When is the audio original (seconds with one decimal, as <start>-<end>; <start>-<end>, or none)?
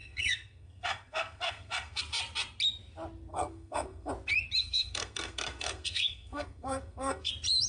2.0-3.3; 4.1-4.6; 7.3-7.7